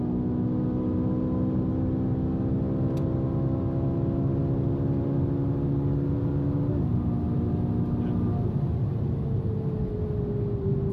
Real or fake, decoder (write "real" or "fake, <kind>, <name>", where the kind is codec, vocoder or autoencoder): real